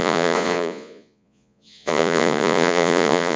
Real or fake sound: fake